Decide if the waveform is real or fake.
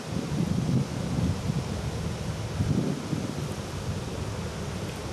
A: real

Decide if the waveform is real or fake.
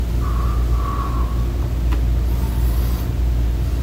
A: real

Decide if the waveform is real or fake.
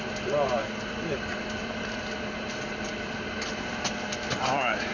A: fake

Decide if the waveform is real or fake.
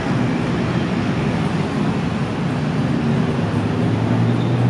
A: real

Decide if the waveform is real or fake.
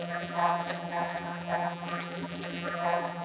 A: fake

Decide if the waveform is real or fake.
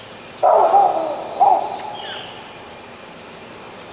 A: fake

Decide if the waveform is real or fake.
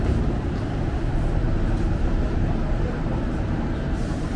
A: fake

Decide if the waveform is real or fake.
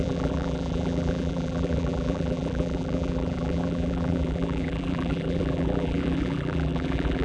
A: fake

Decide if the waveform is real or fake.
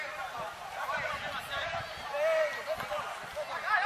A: real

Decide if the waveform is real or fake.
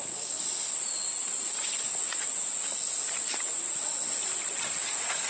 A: real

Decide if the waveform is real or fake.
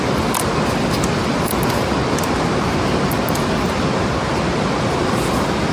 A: real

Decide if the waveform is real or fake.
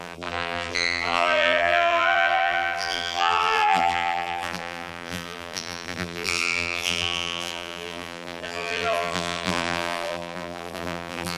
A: fake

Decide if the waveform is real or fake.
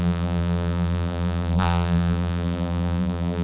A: fake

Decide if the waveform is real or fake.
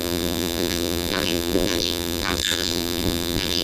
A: fake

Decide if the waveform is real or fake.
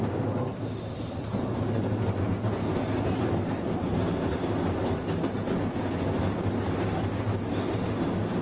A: real